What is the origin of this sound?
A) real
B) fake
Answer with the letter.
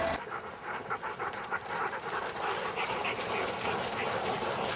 A